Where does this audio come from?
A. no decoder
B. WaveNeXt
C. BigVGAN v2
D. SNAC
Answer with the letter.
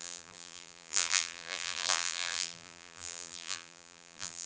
C